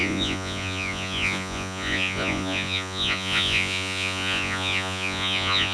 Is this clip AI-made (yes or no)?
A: yes